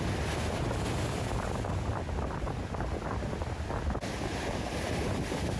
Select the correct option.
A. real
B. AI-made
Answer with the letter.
A